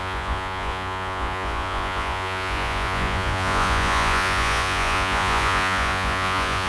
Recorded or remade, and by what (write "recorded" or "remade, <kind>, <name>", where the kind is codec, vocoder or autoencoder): remade, vocoder, Vocos